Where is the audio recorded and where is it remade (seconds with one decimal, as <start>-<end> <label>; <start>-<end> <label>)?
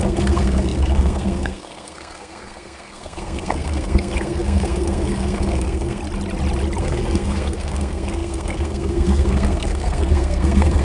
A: 0.0-6.0 remade; 6.0-6.8 recorded; 6.8-10.8 remade